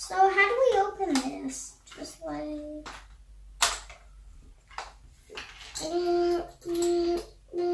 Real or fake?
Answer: real